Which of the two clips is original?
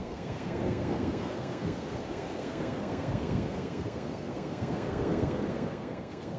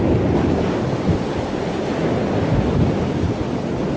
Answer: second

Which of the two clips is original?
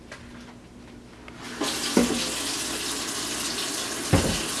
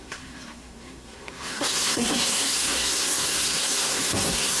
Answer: first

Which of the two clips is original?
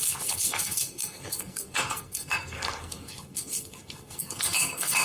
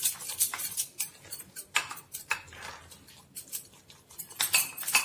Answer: second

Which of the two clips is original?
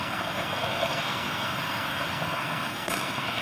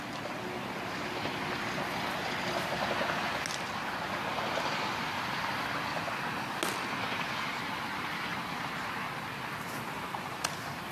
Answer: second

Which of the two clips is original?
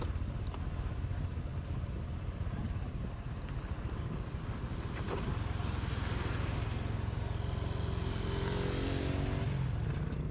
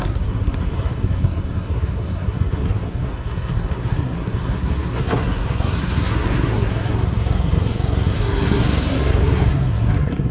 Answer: first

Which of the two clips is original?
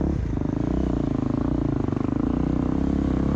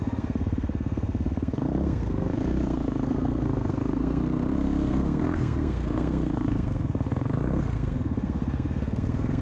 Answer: first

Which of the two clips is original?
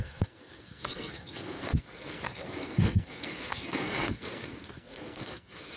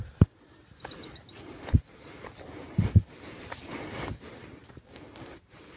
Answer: second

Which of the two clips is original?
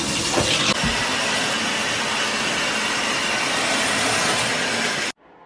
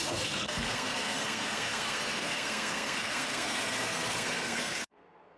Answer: first